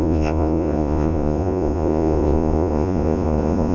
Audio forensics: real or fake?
fake